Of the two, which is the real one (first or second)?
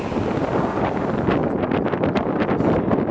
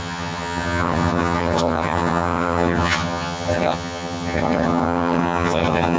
first